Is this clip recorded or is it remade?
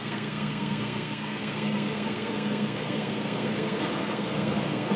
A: remade